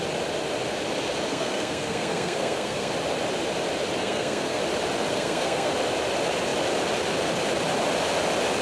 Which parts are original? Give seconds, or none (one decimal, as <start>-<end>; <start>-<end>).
0.0-1.3; 2.9-4.0; 4.6-5.1; 5.7-8.6